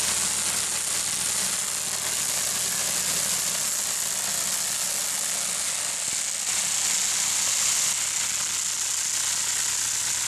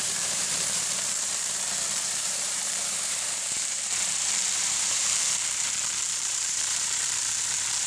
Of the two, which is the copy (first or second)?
second